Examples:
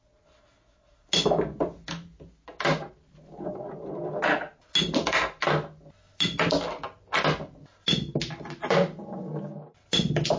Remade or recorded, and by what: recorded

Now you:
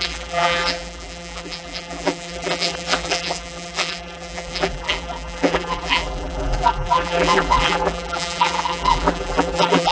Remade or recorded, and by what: remade, vocoder, BigVGAN v2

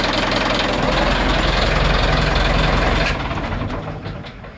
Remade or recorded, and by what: recorded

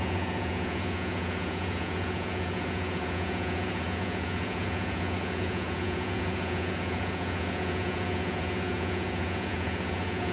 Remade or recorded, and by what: remade, vocoder, Vocos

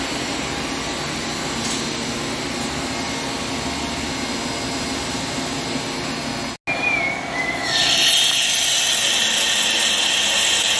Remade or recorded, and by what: recorded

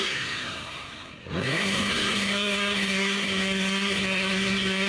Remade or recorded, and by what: remade, codec, SNAC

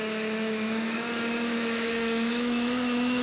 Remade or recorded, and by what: remade, autoencoder, DAC-VAE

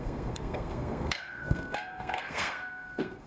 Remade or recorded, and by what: remade, codec, SNAC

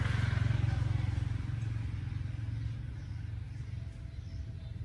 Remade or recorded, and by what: recorded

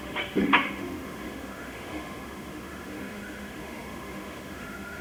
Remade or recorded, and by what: remade, autoencoder, DAC-VAE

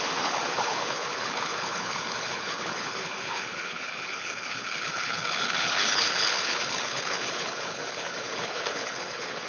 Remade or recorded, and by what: remade, codec, HILCodec